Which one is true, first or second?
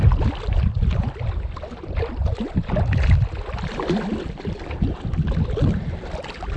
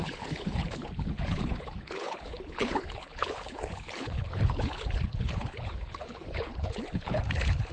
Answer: first